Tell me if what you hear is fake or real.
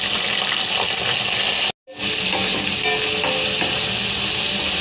real